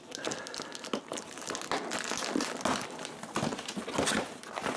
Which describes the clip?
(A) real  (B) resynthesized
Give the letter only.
A